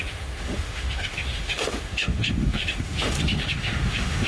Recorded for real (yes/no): no